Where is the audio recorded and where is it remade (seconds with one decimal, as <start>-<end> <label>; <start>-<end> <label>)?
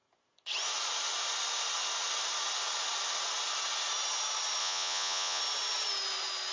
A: 0.0-4.6 recorded; 4.6-5.4 remade; 5.4-6.5 recorded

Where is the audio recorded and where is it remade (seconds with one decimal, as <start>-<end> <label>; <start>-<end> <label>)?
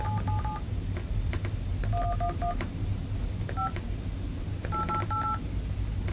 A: 0.0-6.1 recorded